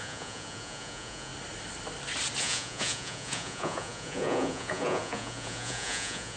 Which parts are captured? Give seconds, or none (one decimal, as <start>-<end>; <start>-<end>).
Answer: 1.3-2.4